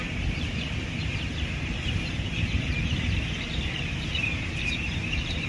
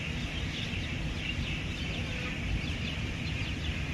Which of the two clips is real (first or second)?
second